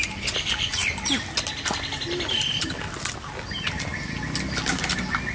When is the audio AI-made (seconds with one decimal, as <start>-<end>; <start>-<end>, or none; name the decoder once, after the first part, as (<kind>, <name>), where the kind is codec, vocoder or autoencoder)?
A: none